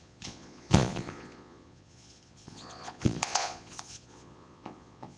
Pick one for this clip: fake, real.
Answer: fake